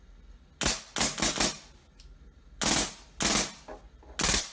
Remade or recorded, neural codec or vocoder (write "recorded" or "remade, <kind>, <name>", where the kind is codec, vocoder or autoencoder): recorded